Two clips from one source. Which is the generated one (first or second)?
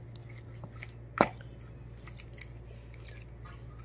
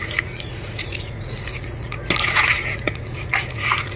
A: second